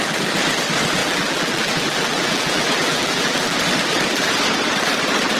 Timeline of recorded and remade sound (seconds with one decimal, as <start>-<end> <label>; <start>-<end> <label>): 0.0-1.0 recorded; 1.0-3.6 remade; 3.6-5.4 recorded